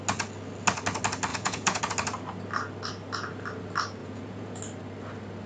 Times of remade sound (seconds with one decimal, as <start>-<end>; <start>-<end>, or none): 1.3-1.8; 4.0-4.6

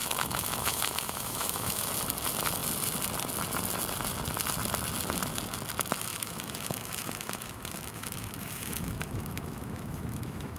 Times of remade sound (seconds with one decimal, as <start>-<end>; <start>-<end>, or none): 0.0-1.9; 6.1-10.6

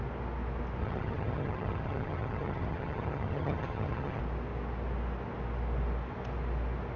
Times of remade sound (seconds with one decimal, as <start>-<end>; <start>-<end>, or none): 0.8-4.2